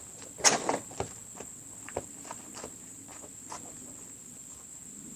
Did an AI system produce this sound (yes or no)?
no